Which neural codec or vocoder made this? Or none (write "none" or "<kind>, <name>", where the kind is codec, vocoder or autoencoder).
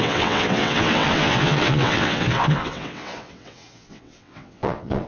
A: vocoder, WaveNeXt